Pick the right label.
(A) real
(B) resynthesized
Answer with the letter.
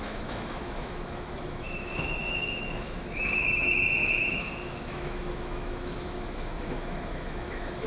B